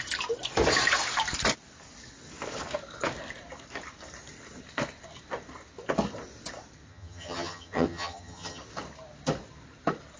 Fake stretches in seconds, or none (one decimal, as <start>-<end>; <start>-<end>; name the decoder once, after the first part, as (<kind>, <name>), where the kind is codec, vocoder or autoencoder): 6.9-8.6 (vocoder, HiFi-GAN)